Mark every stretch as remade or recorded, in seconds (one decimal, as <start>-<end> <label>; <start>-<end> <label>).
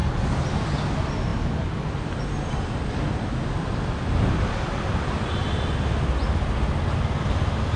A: 0.0-7.8 recorded